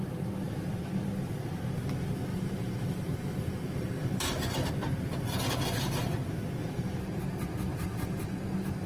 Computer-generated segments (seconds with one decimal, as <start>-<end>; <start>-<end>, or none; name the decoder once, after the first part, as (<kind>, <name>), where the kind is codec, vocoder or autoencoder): 2.3-4.7 (vocoder, BigVGAN v2); 7.7-8.4